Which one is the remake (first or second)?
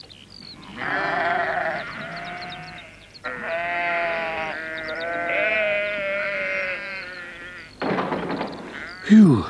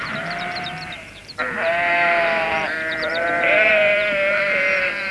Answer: second